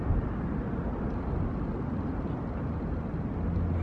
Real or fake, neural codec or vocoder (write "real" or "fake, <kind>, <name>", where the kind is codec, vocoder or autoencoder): real